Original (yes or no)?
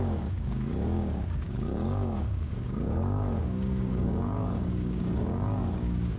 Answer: no